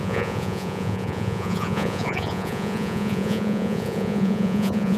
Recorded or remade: remade